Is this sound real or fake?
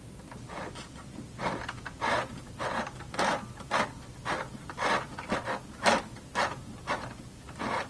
real